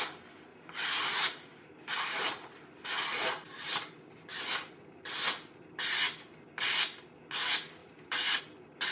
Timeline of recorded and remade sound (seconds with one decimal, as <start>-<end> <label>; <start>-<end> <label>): 0.0-0.5 recorded; 0.5-3.7 remade; 3.7-7.8 recorded; 7.8-8.4 remade; 8.4-8.9 recorded